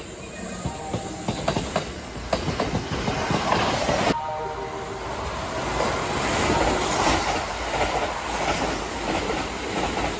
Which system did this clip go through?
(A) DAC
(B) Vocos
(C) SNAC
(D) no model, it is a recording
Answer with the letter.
D